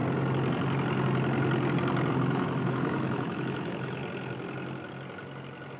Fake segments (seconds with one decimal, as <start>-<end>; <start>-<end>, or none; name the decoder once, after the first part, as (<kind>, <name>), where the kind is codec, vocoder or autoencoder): 2.1-4.0 (autoencoder, DAC-VAE)